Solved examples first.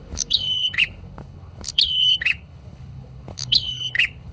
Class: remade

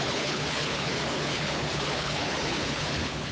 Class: remade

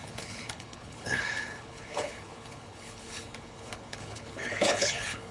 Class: remade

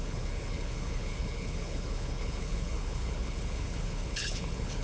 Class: remade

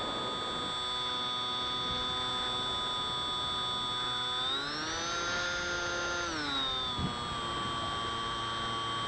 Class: recorded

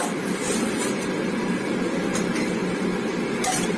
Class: recorded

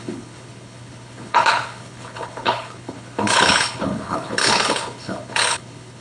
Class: remade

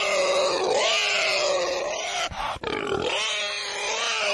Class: recorded